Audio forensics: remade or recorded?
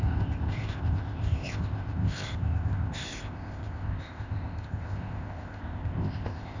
remade